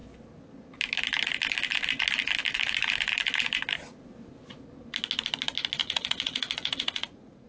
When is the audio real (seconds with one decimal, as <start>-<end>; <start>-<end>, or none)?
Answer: 0.0-5.8